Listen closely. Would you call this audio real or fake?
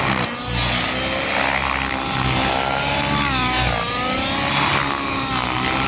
real